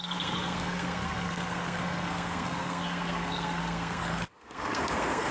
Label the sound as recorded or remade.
remade